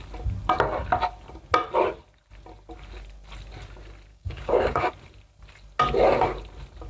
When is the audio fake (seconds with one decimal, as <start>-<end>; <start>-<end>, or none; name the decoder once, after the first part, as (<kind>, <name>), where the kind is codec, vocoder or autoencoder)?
4.1-4.9 (codec, DAC)